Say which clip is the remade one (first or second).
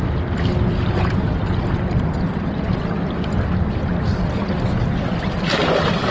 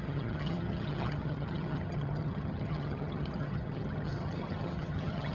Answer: second